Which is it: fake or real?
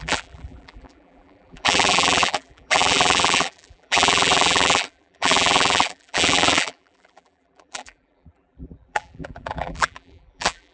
fake